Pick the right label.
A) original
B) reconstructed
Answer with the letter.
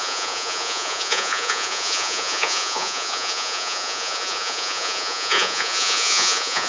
B